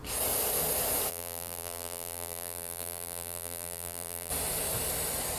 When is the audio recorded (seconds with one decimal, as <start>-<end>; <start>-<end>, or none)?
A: 0.0-1.1; 4.3-5.4